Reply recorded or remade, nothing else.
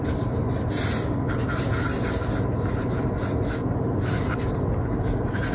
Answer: recorded